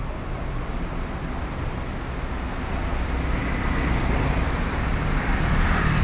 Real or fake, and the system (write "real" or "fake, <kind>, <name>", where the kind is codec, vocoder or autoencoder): real